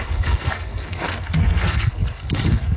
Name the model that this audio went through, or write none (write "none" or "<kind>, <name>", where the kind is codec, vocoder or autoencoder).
codec, SNAC